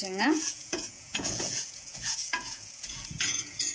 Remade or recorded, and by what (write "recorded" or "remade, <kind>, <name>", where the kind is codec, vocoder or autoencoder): remade, vocoder, Vocos